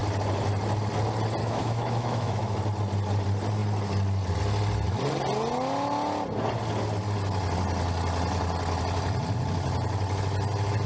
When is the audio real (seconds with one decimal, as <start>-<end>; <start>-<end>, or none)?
0.0-1.4; 2.6-10.9